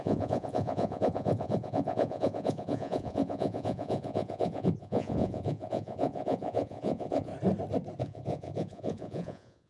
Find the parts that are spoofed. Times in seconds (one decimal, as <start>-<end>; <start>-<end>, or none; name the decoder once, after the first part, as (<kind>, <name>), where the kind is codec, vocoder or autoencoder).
0.0-7.3 (vocoder, Vocos); 8.0-9.7